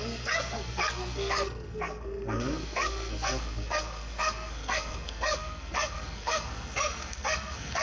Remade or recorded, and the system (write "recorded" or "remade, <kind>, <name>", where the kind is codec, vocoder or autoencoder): remade, codec, SNAC